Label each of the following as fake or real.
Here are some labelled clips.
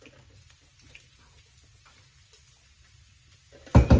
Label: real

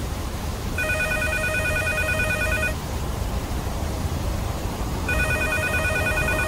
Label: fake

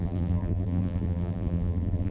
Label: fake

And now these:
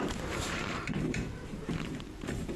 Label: fake